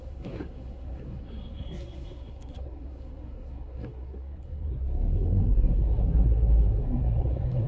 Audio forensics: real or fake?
fake